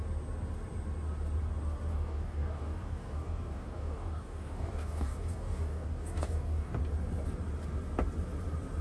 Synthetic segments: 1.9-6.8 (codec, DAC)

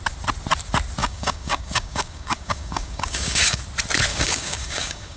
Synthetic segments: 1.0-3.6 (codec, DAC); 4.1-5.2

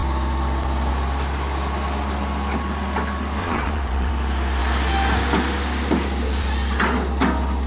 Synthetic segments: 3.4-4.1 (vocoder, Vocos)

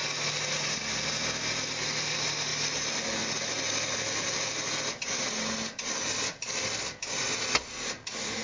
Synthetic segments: none